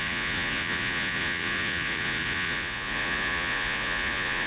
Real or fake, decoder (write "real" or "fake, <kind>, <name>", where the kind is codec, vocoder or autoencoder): fake, vocoder, Vocos